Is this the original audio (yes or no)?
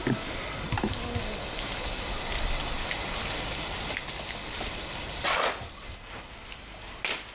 yes